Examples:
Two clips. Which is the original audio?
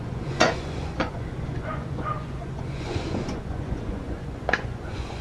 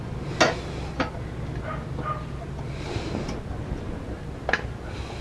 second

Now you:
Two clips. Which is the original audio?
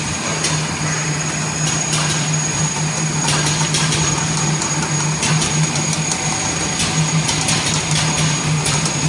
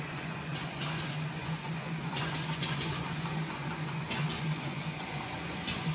first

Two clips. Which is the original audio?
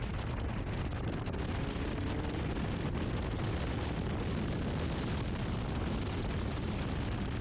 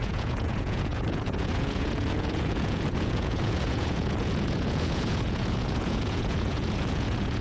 first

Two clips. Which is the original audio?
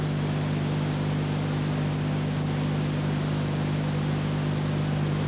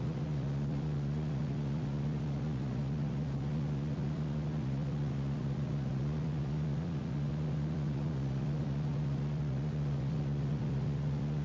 first